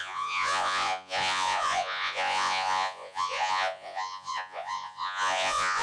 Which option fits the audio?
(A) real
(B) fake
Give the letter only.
B